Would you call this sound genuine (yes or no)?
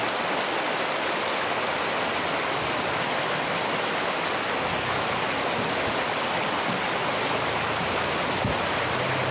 yes